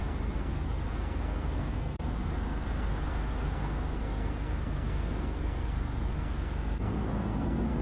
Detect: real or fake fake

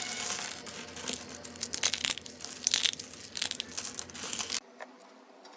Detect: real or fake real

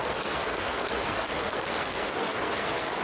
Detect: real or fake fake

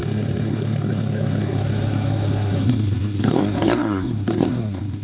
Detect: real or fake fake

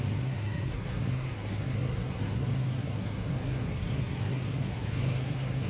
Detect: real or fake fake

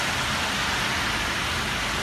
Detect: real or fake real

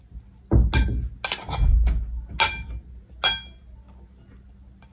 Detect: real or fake real